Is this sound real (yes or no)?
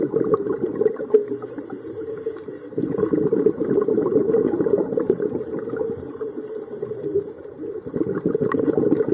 no